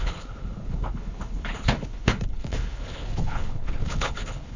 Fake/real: fake